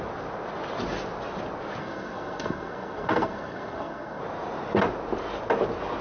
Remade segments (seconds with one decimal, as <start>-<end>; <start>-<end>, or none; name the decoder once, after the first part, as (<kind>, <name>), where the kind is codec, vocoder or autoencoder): 1.8-4.2 (codec, SNAC)